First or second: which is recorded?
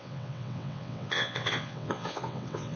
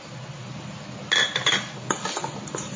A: second